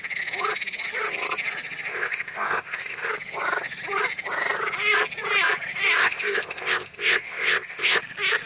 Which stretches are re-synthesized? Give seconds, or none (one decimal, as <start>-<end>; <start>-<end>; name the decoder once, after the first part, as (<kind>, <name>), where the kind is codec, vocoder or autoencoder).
1.9-3.1 (codec, ZipCodec); 6.0-8.0

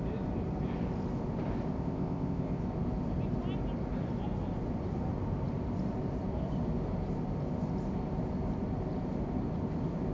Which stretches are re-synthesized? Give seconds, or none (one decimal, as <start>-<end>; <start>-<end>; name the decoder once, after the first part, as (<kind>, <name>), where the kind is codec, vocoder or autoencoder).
1.7-2.6 (codec, ZipCodec)

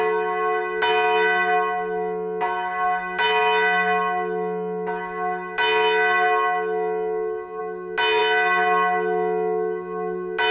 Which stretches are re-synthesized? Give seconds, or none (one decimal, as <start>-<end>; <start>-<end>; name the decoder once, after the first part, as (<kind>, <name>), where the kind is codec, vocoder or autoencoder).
none

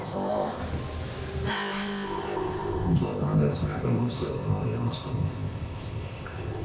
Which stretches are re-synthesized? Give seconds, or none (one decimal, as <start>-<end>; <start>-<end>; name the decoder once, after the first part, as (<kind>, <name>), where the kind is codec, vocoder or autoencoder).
0.0-0.6 (codec, ZipCodec); 1.5-6.6

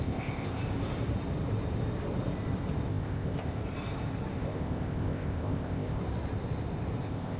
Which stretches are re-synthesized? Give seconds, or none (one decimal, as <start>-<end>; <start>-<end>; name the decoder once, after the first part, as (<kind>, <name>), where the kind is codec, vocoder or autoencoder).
0.0-0.6 (codec, ZipCodec); 2.9-3.6; 4.4-6.0; 7.0-7.4

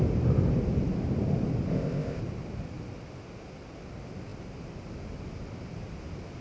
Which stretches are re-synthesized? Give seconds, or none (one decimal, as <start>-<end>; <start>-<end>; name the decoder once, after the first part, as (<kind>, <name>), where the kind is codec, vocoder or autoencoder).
1.7-2.2 (codec, ZipCodec)

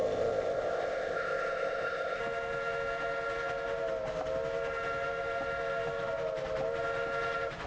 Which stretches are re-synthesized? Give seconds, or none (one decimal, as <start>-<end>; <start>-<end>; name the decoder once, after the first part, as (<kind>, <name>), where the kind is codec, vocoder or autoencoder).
0.0-2.2 (codec, ZipCodec)